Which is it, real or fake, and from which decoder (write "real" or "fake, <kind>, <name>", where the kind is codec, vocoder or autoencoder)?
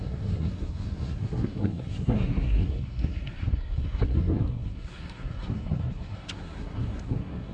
fake, codec, SNAC